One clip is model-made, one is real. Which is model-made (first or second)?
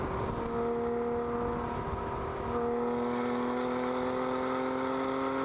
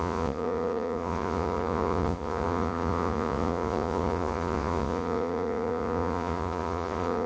second